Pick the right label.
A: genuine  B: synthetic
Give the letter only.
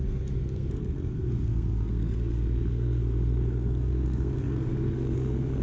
B